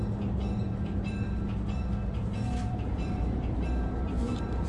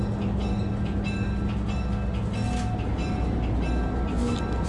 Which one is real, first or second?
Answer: second